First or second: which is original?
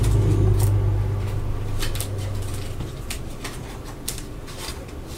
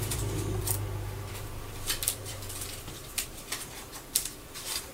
first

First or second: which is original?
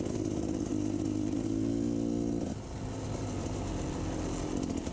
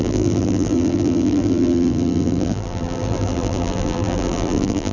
first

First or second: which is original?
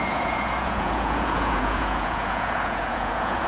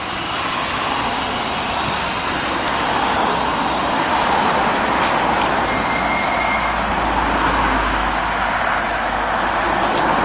second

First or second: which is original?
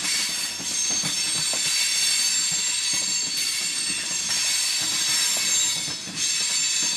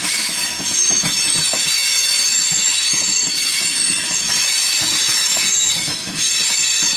first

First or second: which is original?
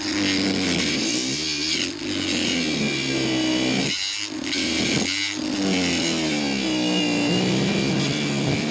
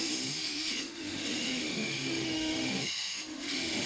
first